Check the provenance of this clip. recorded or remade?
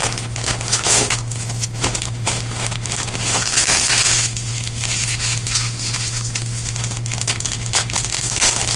remade